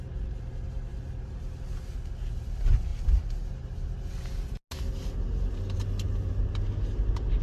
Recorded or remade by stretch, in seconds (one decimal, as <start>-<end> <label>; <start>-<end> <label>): 0.0-7.4 recorded